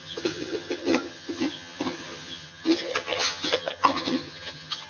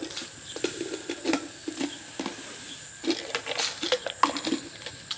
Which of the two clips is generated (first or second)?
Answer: first